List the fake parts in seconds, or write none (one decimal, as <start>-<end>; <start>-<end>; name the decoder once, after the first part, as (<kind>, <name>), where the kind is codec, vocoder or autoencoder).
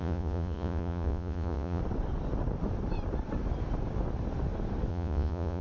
0.0-1.8 (vocoder, Vocos); 4.9-5.6